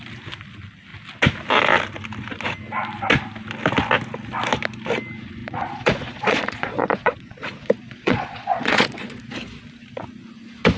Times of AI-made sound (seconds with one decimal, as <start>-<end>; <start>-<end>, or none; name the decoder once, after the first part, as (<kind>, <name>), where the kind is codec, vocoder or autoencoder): 5.4-9.2 (vocoder, Vocos)